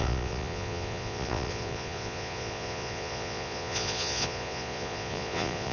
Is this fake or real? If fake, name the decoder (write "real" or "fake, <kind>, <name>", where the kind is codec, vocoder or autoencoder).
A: fake, vocoder, Vocos